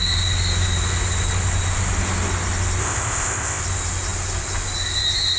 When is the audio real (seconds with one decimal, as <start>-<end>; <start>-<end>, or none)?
0.0-2.8; 3.6-5.4